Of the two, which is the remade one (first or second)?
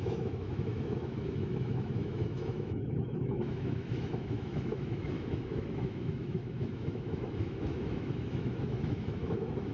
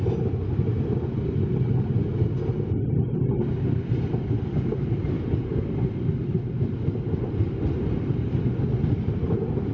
first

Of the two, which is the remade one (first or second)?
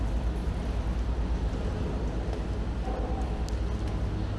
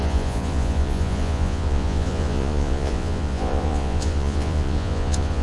second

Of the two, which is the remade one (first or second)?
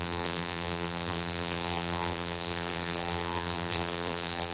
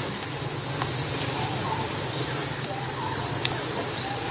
first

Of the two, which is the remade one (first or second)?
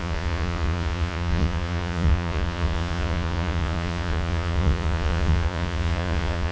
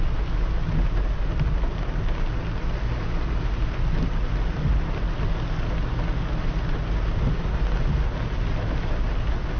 first